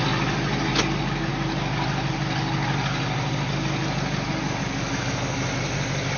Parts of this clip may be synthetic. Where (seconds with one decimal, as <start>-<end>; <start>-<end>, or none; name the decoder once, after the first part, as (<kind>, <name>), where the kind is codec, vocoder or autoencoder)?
none